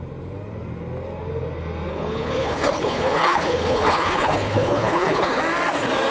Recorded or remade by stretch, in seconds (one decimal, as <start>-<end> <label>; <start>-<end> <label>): 0.0-1.9 recorded; 1.9-5.4 remade; 5.4-6.1 recorded